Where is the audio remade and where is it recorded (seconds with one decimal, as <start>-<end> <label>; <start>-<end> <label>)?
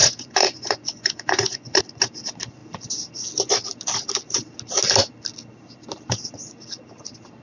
0.0-1.8 remade; 1.8-7.4 recorded